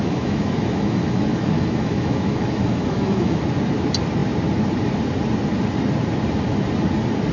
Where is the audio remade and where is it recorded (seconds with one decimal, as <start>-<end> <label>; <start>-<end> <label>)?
0.0-3.4 remade; 3.4-7.3 recorded